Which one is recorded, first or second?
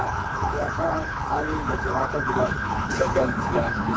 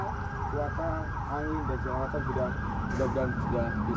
second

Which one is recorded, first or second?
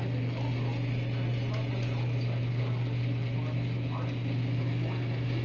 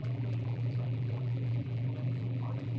first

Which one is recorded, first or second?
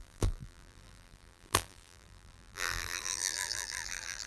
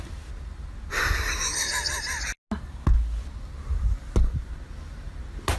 second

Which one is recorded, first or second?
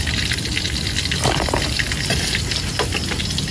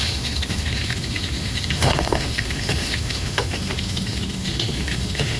first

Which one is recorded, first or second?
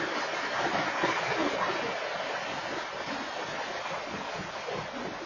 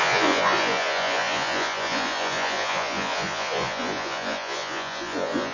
first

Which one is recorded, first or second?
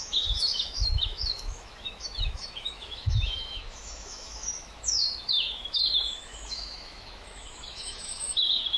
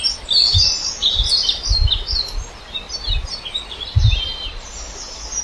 second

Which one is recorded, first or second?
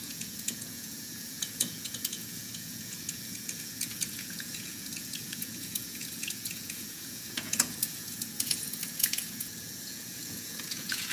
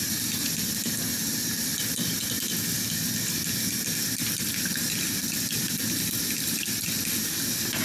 second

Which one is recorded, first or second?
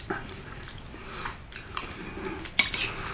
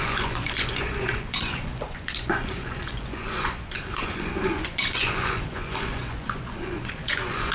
first